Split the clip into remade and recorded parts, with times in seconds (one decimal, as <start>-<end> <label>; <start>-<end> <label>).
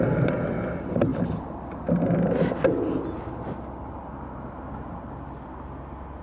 0.0-6.2 recorded